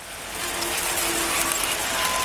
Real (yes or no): yes